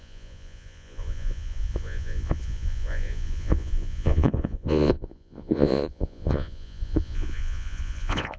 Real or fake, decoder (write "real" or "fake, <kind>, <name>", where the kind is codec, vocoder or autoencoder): fake, vocoder, Vocos